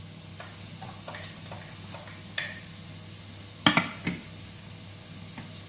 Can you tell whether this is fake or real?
real